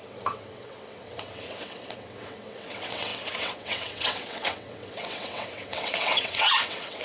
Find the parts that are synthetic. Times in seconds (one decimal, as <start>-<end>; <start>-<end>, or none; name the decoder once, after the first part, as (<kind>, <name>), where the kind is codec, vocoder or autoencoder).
0.0-7.0 (vocoder, WaveNeXt)